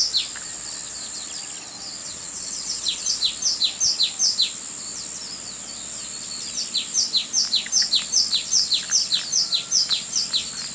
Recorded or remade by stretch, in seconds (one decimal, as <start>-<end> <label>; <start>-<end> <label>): 0.0-2.0 recorded; 2.0-3.1 remade; 3.1-10.7 recorded